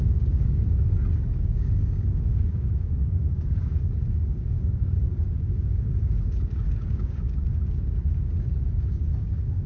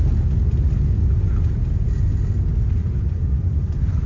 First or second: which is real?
second